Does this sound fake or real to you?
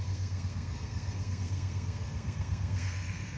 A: fake